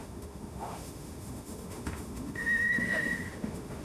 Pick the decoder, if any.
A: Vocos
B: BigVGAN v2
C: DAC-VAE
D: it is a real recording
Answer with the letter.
C